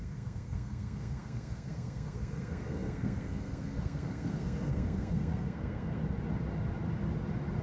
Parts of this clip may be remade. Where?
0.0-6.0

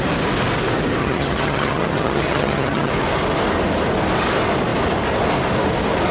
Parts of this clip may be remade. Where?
1.0-2.9

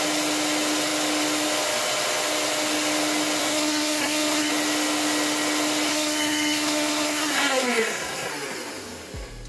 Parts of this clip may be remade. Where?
3.4-4.5; 5.9-8.3

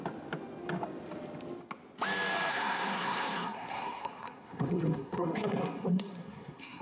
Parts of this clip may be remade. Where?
2.5-6.8

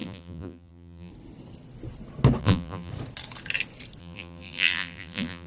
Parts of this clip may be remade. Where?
0.0-1.1; 2.4-2.9; 4.0-5.5

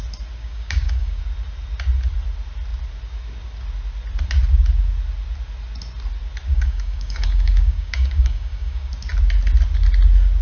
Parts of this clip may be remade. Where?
0.4-1.2; 6.5-8.9

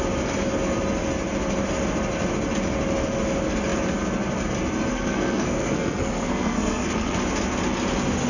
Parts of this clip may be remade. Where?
4.9-7.2